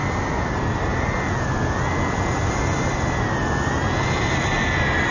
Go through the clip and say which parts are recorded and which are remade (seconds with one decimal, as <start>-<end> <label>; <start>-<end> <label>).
0.0-5.1 recorded